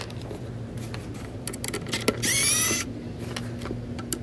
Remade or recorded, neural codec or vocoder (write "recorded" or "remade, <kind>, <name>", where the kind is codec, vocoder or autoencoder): recorded